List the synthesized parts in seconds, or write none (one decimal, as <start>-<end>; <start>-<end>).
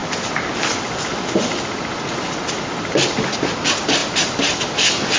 none